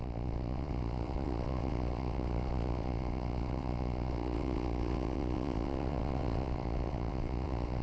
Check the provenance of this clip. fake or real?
fake